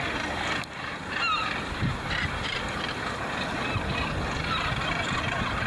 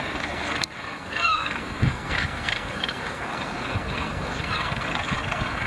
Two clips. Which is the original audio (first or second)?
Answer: first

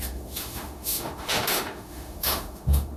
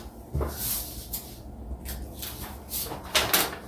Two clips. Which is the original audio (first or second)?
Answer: second